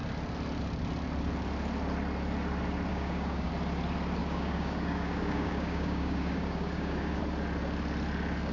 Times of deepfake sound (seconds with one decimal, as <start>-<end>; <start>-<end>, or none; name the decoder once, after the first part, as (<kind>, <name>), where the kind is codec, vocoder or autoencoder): 2.9-3.5 (codec, DAC); 4.2-7.2